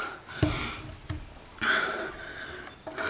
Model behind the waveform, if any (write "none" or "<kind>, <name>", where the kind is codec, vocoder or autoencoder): none